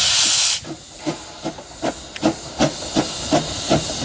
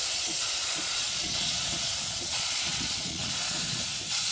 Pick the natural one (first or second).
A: first